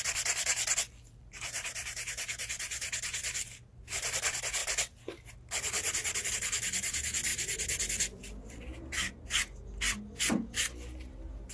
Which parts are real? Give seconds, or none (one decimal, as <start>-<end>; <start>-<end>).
0.0-11.5